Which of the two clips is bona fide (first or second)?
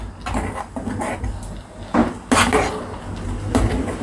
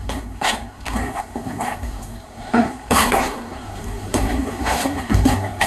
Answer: first